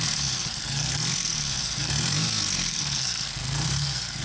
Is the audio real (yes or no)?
no